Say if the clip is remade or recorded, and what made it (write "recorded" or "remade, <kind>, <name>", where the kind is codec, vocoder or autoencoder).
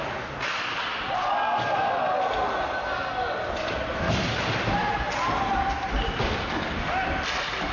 recorded